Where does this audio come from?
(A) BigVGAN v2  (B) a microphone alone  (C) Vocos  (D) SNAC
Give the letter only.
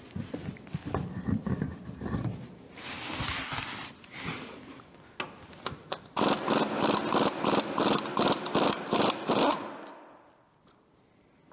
B